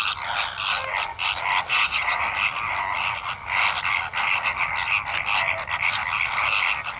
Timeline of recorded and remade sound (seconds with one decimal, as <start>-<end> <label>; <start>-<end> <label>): 0.0-1.7 recorded; 1.7-2.2 remade; 2.2-7.0 recorded